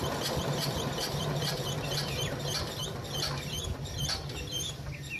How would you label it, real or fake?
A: fake